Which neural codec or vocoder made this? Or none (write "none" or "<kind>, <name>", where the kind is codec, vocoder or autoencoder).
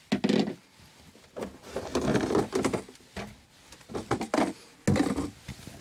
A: none